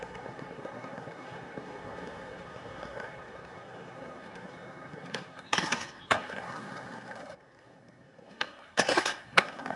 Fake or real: fake